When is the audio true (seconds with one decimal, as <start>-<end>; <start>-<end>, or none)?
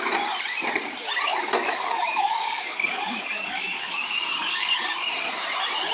0.0-1.3; 4.8-5.9